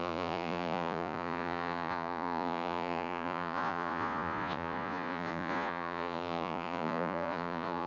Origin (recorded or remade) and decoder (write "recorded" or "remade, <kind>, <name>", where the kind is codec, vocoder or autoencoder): remade, vocoder, Vocos